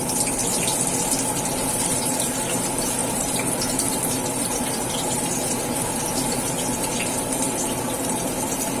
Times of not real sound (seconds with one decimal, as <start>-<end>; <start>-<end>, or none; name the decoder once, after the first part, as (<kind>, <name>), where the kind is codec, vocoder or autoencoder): 0.0-0.4 (vocoder, BigVGAN v2); 1.5-5.8; 6.3-8.8